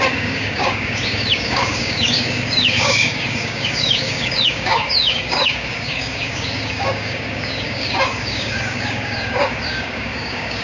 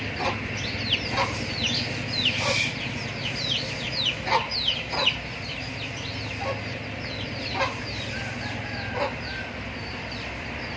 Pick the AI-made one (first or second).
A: first